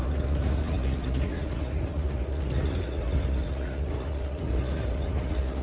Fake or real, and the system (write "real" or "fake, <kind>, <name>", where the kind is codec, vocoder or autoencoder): fake, vocoder, Vocos